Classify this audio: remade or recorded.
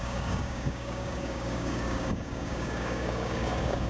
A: remade